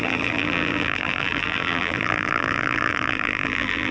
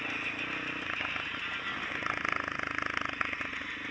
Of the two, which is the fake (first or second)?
first